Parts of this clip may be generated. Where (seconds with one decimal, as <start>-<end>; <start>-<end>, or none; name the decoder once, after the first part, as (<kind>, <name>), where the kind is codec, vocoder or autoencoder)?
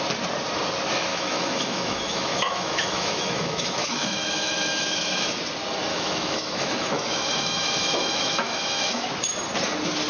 1.1-5.4 (autoencoder, DAC-VAE); 5.9-9.1